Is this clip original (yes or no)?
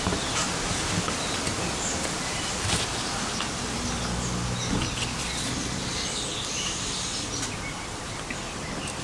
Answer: yes